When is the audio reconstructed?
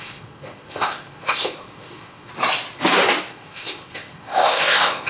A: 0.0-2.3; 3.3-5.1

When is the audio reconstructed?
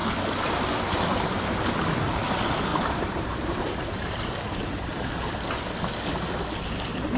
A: 2.7-4.8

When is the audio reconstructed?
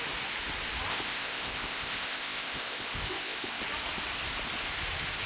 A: 0.9-3.6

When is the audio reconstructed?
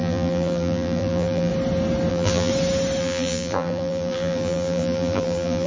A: 0.0-1.5; 2.1-2.5; 3.0-5.7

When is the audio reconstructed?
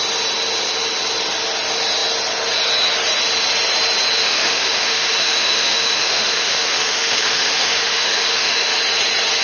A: 4.2-8.8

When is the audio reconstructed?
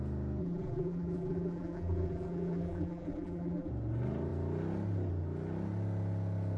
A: 0.4-3.7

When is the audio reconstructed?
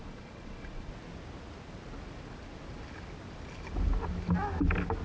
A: 0.0-0.9